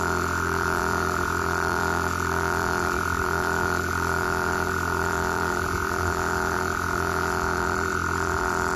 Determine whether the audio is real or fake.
fake